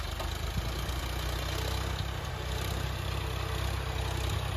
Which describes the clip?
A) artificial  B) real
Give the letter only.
B